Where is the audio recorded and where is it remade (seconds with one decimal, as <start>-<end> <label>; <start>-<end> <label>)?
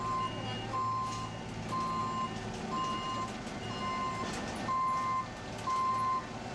0.0-6.5 recorded